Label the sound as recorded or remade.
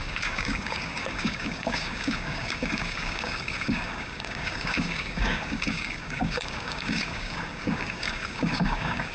remade